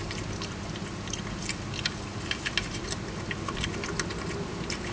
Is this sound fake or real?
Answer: real